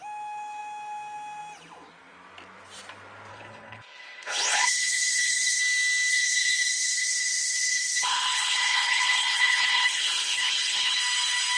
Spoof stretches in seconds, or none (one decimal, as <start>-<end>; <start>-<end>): 3.3-5.6; 6.1-11.0